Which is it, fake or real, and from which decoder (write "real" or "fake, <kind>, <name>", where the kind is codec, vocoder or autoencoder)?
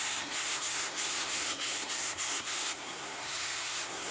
fake, codec, SNAC